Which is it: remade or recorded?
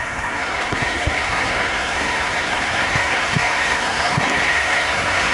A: remade